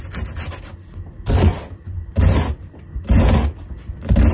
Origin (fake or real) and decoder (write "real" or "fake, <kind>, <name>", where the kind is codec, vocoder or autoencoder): real